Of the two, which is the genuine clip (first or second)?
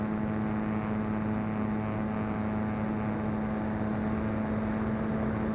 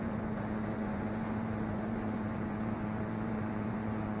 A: first